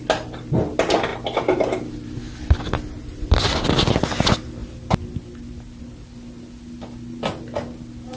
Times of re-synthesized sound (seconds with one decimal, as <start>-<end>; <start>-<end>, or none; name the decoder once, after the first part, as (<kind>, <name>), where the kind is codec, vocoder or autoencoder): none